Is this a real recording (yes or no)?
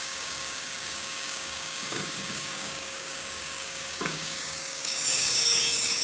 no